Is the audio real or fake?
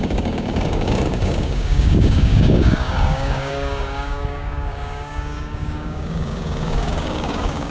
fake